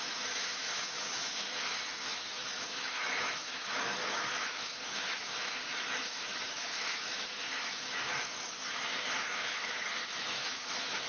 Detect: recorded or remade remade